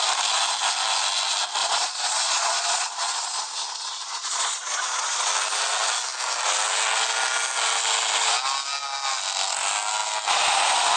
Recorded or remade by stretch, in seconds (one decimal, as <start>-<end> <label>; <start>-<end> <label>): 0.0-1.6 recorded; 1.6-5.3 remade; 5.3-11.0 recorded